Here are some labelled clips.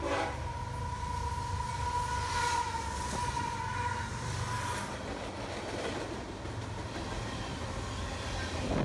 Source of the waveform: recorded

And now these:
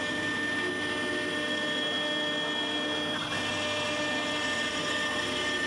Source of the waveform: recorded